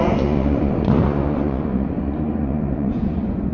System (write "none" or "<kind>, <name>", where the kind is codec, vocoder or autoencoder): vocoder, Vocos